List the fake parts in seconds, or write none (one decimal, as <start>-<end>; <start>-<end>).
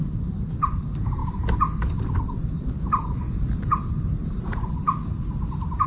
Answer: none